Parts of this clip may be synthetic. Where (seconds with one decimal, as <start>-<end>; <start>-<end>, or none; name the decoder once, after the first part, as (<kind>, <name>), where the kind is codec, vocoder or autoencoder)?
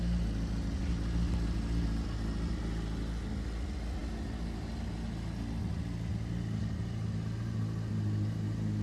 none